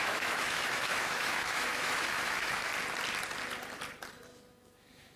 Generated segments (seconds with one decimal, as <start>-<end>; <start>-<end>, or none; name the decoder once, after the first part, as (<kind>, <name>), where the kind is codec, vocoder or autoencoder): 0.0-2.7 (autoencoder, DAC-VAE); 4.5-5.2